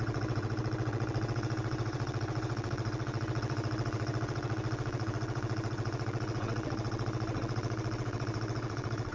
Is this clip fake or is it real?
fake